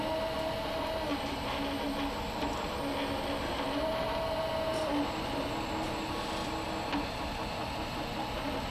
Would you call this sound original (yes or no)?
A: yes